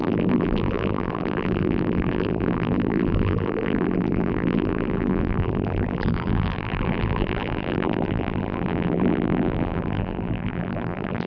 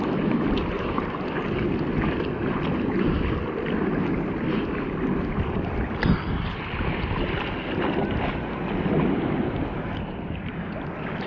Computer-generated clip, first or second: first